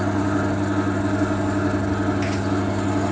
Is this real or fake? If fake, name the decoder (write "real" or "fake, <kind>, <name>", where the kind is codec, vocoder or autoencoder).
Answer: real